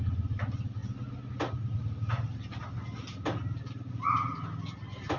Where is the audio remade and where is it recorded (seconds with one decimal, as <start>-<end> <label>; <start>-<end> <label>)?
0.0-5.2 recorded